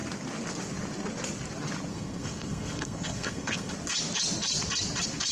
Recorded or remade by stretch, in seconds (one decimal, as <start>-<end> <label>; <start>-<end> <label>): 0.0-1.9 recorded; 1.9-3.7 remade; 3.7-5.3 recorded